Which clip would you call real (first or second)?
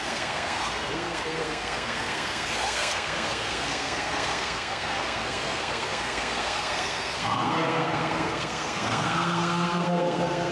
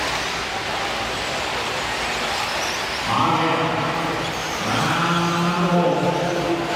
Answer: second